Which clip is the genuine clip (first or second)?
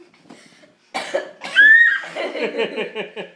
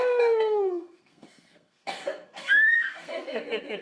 first